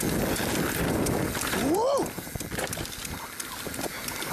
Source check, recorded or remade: recorded